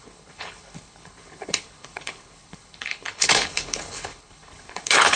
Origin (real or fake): fake